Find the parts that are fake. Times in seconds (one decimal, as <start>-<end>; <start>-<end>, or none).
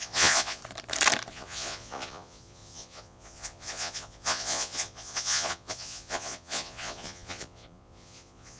0.0-0.6; 1.3-8.6